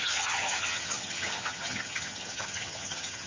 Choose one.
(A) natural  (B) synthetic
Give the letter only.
B